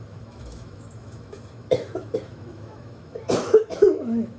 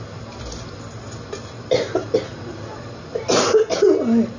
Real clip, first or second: second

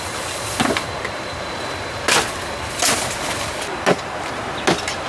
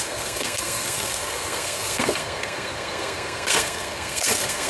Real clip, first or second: first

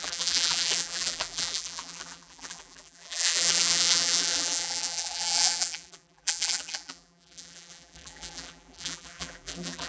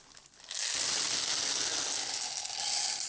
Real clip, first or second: second